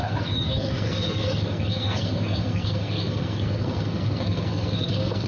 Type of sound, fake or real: fake